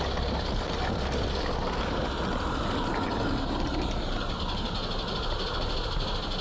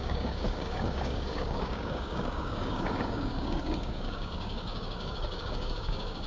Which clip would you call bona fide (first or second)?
first